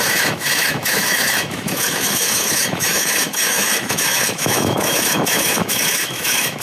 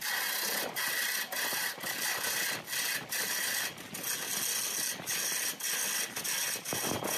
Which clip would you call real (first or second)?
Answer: second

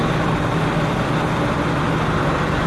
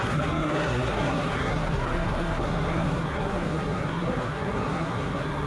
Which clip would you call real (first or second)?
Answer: first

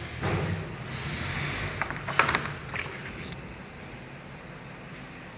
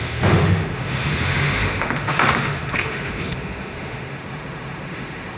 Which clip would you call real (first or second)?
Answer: first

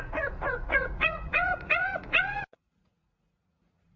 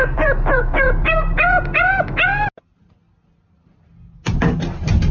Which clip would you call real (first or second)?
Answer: second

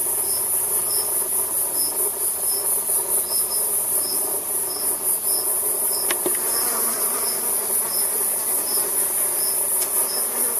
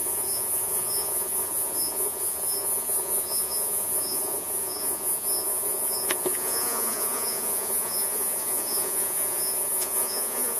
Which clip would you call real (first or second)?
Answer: first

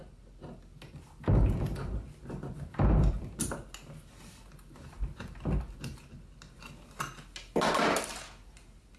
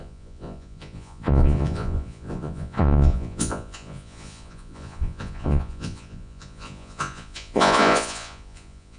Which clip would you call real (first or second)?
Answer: first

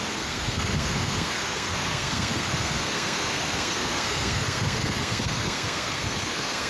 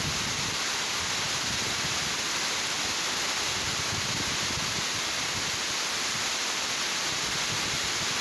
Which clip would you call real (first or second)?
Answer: second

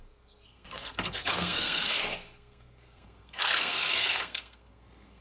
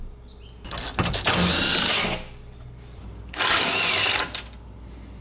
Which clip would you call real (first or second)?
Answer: second